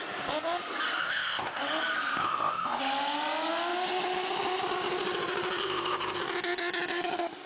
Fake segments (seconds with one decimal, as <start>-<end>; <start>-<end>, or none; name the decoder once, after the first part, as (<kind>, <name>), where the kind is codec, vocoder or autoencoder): 1.0-1.6 (codec, ZipCodec); 2.2-2.8; 5.6-6.2